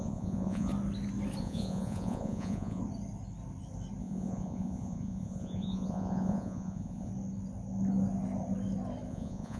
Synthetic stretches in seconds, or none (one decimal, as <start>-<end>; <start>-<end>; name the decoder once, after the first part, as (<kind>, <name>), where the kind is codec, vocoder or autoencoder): 0.0-0.7 (vocoder, Vocos); 1.4-2.8; 4.0-7.1; 9.1-9.6